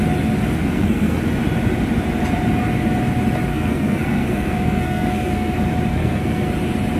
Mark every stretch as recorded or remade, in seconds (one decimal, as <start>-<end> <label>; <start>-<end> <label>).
0.0-0.6 recorded; 0.6-1.2 remade; 1.2-3.5 recorded; 3.5-5.5 remade; 5.5-5.9 recorded; 5.9-6.5 remade; 6.5-7.0 recorded